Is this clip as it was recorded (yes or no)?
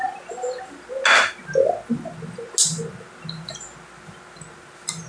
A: yes